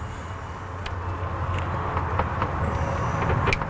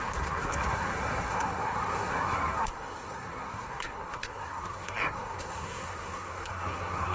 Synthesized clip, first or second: second